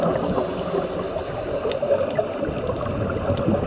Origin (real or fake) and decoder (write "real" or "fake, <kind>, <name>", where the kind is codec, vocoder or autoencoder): real